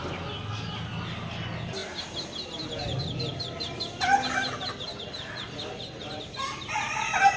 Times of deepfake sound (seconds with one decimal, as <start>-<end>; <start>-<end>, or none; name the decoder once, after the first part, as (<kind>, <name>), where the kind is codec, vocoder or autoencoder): none